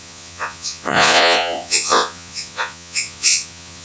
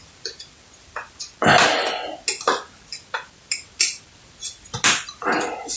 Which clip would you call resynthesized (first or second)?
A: first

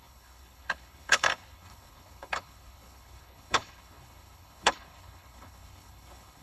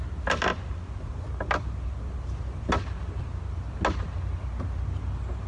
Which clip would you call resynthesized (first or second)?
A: first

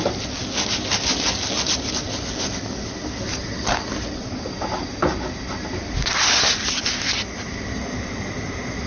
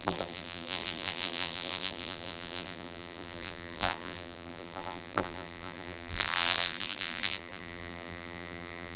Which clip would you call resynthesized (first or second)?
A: second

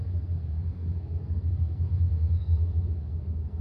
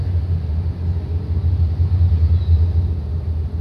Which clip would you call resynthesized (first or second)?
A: first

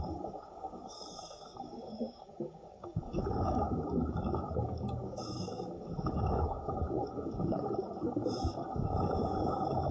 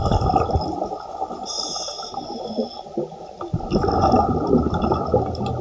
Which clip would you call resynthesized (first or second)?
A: first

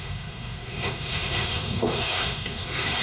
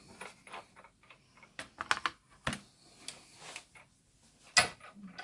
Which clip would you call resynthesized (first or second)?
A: first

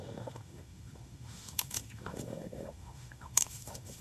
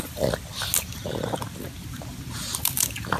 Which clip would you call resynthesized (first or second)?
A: first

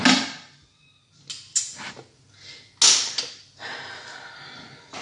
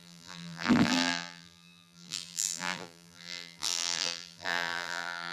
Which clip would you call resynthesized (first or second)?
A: second